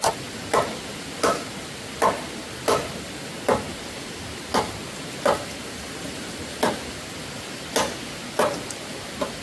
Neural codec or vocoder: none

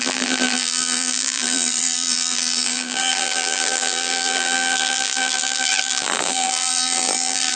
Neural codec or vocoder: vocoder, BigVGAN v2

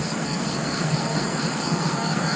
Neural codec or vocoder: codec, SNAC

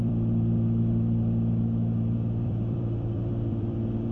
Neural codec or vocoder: vocoder, BigVGAN v2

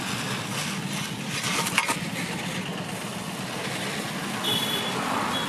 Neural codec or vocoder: none